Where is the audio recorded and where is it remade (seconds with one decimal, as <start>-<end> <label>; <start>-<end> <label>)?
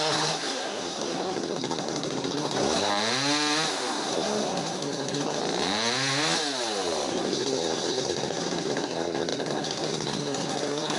0.0-2.9 remade; 2.9-3.7 recorded; 3.7-5.4 remade; 5.4-7.1 recorded; 7.1-11.0 remade